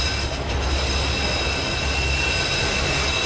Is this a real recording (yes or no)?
yes